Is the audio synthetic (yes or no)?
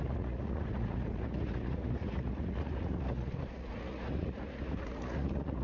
yes